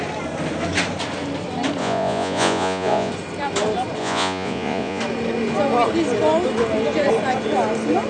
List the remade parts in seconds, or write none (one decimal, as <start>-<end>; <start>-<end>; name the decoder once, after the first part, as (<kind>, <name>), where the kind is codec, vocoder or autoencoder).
1.8-3.1 (vocoder, Vocos); 4.0-5.0